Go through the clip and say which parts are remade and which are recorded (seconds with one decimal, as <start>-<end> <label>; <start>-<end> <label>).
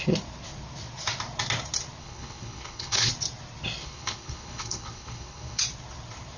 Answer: 0.0-2.0 recorded; 2.0-3.1 remade; 3.1-3.8 recorded; 3.8-5.6 remade; 5.6-6.4 recorded